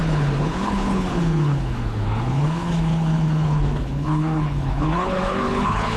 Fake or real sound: fake